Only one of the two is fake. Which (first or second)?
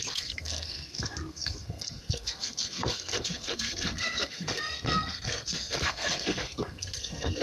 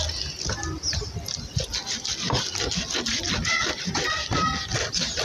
first